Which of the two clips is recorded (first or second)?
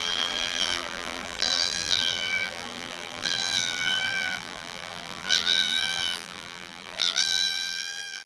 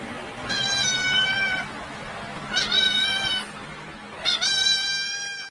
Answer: second